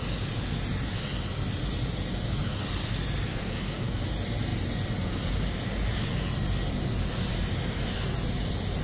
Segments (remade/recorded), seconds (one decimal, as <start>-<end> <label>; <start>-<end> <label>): 0.0-3.3 recorded; 3.3-4.0 remade; 4.0-8.8 recorded